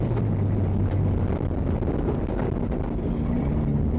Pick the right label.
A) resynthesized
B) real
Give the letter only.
B